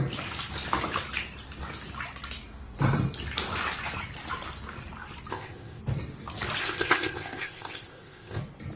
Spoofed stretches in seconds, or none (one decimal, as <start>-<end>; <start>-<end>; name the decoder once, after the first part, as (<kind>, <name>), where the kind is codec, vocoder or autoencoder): 5.3-5.8 (codec, ZipCodec); 6.6-8.4